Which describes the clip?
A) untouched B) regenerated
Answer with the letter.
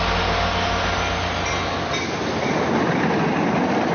A